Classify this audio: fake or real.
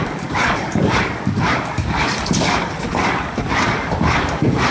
fake